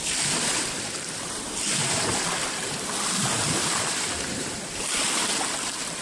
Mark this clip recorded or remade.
remade